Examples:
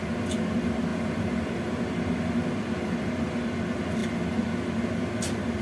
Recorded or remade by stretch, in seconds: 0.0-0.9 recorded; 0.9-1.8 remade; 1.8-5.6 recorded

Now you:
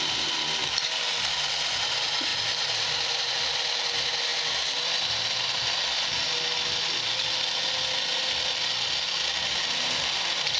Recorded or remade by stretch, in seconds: 0.0-10.6 recorded

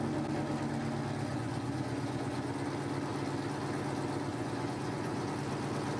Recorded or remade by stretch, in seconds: 0.0-1.3 recorded; 1.3-2.5 remade; 2.5-4.3 recorded; 4.3-5.3 remade; 5.3-6.0 recorded

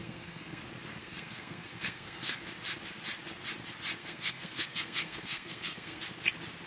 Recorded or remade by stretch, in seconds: 0.0-0.6 remade; 0.6-1.0 recorded; 1.0-2.4 remade; 2.4-4.0 recorded; 4.0-6.0 remade; 6.0-6.7 recorded

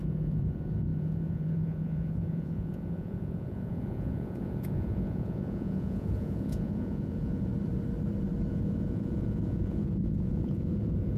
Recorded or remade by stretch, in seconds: 0.0-7.5 remade; 7.5-8.5 recorded; 8.5-11.2 remade

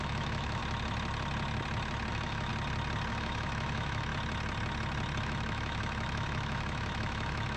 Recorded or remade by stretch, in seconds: 0.0-0.6 remade; 0.6-2.1 recorded; 2.1-2.5 remade; 2.5-3.1 recorded; 3.1-4.1 remade; 4.1-5.2 recorded; 5.2-7.6 remade

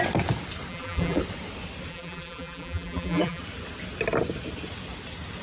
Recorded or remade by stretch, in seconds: 0.0-0.7 recorded; 0.7-1.2 remade; 1.2-1.9 recorded; 1.9-3.4 remade; 3.4-5.4 recorded